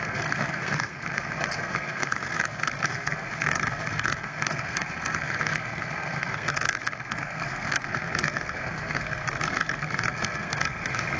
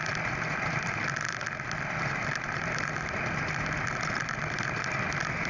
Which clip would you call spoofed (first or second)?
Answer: first